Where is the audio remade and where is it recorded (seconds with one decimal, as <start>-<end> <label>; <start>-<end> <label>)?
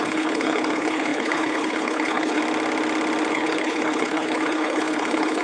0.0-2.4 remade; 2.4-3.3 recorded; 3.3-5.4 remade